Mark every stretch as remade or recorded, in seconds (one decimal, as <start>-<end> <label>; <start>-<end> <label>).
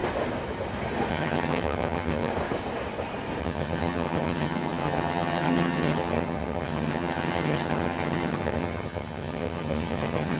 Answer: 0.0-1.1 recorded; 1.1-2.3 remade; 2.3-3.4 recorded; 3.4-10.4 remade